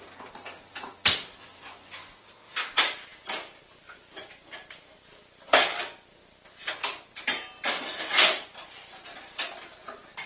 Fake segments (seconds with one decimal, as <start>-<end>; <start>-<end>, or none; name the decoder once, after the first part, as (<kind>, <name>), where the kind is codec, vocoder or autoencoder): 1.5-2.2 (vocoder, Vocos)